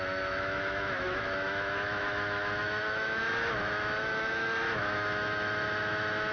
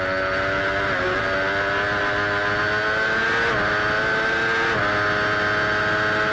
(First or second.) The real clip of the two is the second